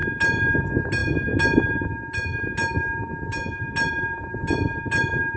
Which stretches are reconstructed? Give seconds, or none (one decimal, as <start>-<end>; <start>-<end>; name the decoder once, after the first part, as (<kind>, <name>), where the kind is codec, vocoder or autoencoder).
none